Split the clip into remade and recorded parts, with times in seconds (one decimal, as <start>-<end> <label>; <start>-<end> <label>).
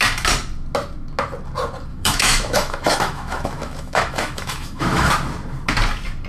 0.0-1.9 recorded; 1.9-5.1 remade; 5.1-6.3 recorded